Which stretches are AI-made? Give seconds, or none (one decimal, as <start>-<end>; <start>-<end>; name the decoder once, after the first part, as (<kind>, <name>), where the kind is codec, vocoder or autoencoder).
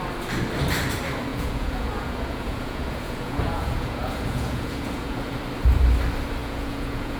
1.3-5.4 (vocoder, Vocos); 6.4-7.2